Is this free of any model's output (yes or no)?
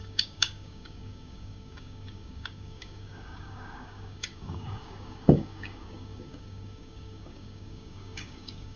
no